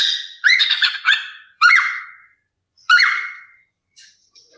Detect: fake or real fake